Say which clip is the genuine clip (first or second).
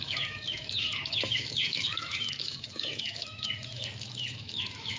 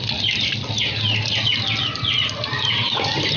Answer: second